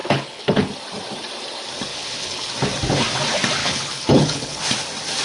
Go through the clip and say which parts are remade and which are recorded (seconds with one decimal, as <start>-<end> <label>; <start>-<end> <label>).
0.0-0.7 remade; 0.7-1.9 recorded; 1.9-2.5 remade; 2.5-3.6 recorded; 3.6-4.6 remade; 4.6-5.2 recorded